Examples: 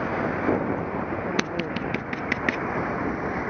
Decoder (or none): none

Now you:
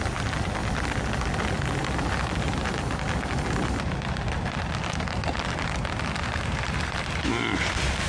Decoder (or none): none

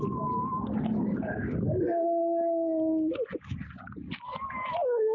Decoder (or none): none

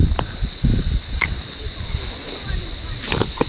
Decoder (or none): none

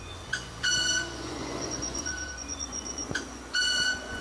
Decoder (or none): vocoder, Vocos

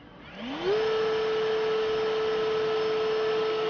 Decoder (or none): none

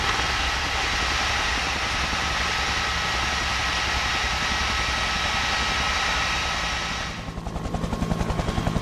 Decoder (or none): none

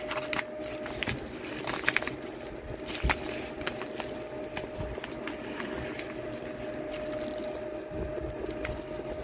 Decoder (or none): none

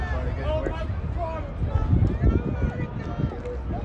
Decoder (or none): none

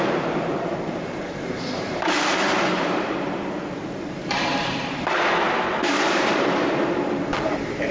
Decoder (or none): vocoder, BigVGAN v2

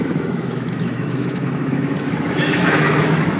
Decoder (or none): autoencoder, DAC-VAE